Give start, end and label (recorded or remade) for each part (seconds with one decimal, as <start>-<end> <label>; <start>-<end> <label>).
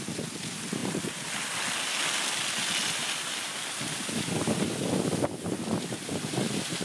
0.0-6.8 recorded